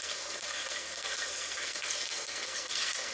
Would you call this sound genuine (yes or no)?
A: no